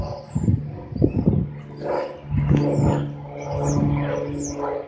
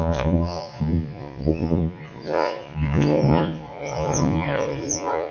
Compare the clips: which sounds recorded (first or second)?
first